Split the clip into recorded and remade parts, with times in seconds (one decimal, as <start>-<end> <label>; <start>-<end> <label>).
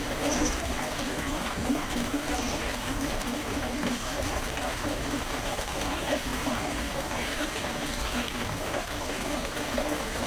0.0-10.3 remade